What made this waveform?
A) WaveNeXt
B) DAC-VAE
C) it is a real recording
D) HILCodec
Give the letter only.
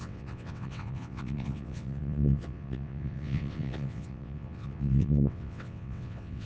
A